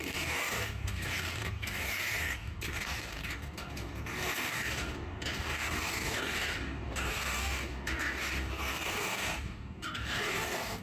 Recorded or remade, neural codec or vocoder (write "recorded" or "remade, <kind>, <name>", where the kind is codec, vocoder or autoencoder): remade, codec, DAC